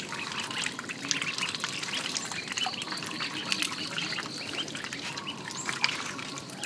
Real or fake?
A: real